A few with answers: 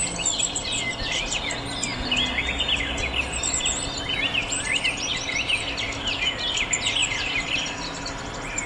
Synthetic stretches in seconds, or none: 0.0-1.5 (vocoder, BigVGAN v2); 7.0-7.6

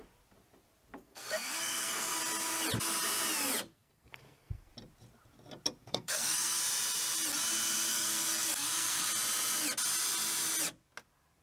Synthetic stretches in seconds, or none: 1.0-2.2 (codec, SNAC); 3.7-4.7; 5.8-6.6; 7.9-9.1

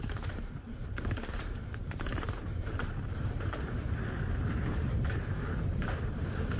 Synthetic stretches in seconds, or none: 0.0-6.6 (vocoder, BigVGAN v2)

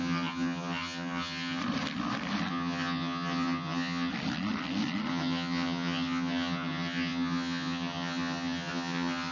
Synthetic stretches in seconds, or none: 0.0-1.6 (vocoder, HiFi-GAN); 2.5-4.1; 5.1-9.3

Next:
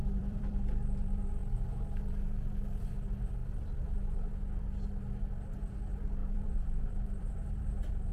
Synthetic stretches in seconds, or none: 0.0-0.6 (vocoder, BigVGAN v2); 3.4-4.3; 6.2-8.1

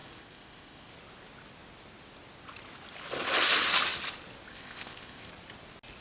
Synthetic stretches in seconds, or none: 0.0-0.9 (codec, ZipCodec); 4.5-5.3